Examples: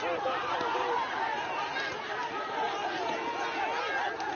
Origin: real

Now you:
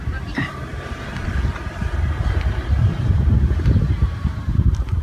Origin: fake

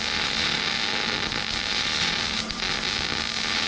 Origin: real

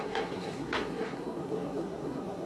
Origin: fake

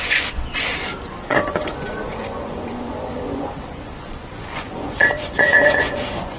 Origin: fake